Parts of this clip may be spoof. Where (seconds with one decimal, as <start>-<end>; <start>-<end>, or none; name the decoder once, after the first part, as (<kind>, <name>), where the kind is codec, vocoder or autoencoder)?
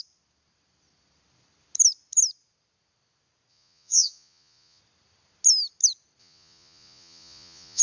3.5-4.8 (vocoder, Vocos); 6.2-7.8